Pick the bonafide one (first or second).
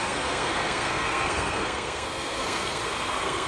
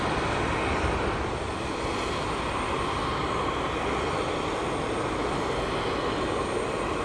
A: second